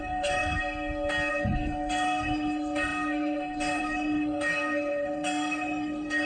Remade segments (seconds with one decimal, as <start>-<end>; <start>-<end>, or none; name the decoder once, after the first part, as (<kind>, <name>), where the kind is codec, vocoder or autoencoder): 0.0-0.6 (codec, SNAC); 1.3-6.2